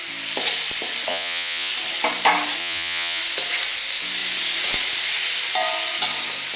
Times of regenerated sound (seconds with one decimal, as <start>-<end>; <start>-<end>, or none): 1.1-1.7; 2.6-3.2